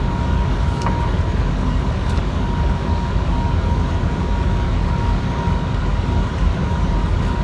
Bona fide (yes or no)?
no